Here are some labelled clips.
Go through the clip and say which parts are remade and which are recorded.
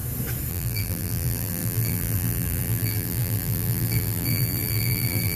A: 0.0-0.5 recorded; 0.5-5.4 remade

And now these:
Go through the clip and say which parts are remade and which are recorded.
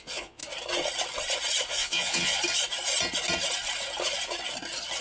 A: 0.0-0.4 remade; 0.4-1.7 recorded; 1.7-2.4 remade; 2.4-5.0 recorded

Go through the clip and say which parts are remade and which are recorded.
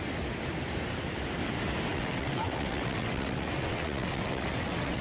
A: 0.0-1.9 recorded; 1.9-5.0 remade